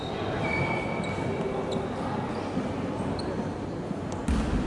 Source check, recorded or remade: recorded